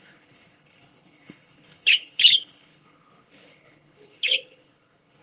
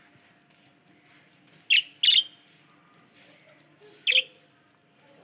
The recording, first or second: second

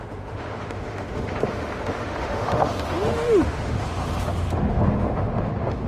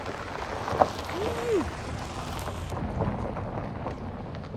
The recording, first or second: second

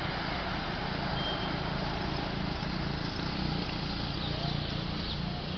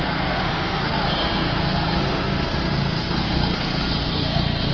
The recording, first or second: first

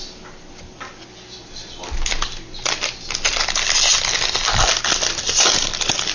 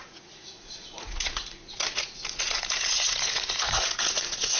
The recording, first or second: first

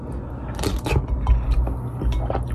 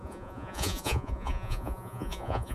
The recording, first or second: first